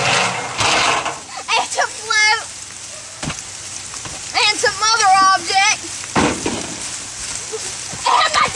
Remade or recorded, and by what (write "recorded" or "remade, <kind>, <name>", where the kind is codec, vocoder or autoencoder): recorded